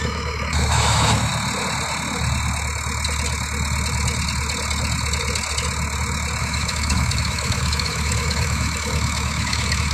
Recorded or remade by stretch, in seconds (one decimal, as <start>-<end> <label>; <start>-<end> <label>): 0.0-1.3 remade; 1.3-6.4 recorded; 6.4-9.9 remade